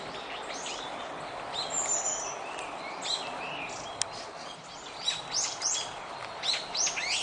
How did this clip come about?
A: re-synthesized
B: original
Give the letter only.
B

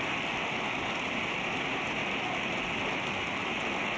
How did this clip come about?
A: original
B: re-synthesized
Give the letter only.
A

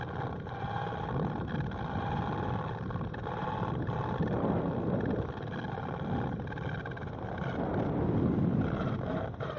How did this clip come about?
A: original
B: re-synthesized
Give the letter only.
A